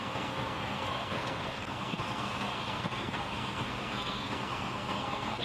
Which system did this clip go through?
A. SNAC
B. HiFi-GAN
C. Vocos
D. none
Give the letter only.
A